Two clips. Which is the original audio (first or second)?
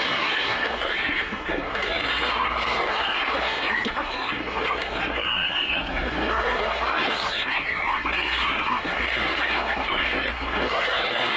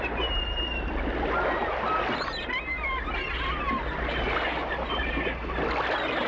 second